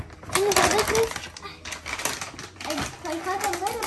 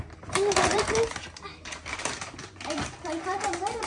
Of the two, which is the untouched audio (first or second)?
first